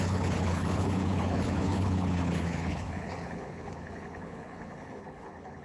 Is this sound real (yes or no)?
no